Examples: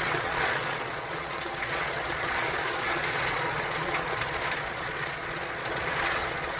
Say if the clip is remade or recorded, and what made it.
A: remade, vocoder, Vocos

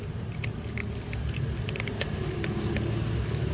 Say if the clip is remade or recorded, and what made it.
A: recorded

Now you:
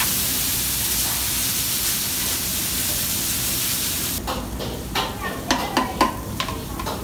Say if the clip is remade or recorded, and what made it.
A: recorded